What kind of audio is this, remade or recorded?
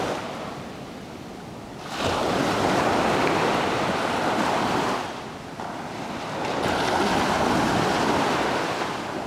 recorded